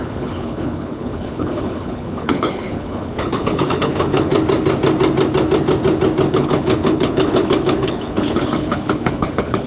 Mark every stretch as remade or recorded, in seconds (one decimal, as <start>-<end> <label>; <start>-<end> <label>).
0.0-4.3 remade; 4.3-6.3 recorded; 6.3-9.7 remade